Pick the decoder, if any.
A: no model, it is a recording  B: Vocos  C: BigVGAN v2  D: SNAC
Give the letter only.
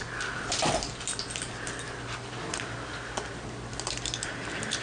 A